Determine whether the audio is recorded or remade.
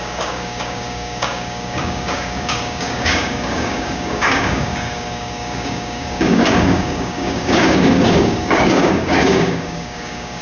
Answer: remade